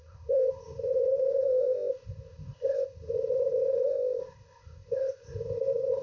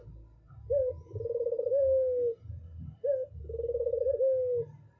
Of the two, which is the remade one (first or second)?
first